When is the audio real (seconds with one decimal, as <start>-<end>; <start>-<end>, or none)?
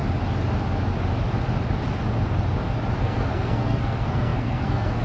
0.0-3.0